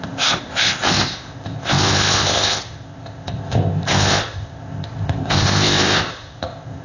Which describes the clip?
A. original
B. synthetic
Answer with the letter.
B